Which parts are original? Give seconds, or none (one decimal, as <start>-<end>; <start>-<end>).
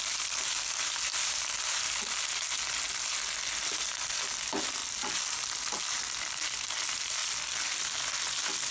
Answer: 0.0-1.1; 2.2-4.8; 5.8-8.7